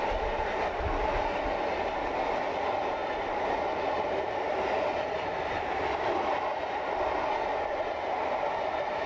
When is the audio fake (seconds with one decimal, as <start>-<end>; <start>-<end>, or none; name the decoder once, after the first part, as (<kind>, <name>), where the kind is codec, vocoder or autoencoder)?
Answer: none